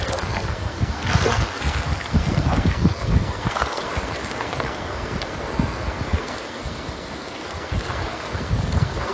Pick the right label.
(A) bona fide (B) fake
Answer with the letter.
B